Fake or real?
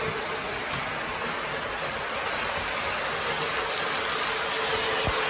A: real